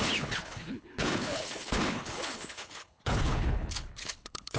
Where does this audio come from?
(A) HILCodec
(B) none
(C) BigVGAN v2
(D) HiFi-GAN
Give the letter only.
A